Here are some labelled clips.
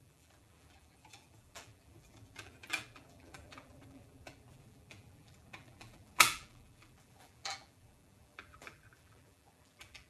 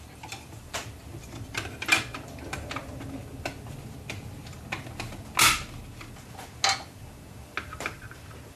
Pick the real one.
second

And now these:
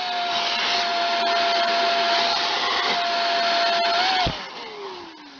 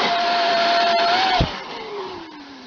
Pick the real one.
first